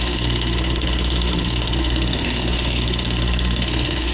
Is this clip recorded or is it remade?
remade